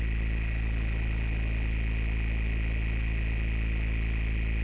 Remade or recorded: recorded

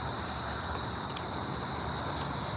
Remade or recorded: recorded